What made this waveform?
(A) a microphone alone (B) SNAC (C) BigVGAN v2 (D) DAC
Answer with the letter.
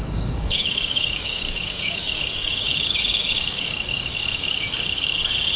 D